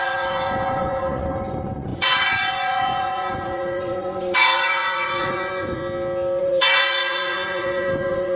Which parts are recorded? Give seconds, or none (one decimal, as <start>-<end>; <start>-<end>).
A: 5.8-6.4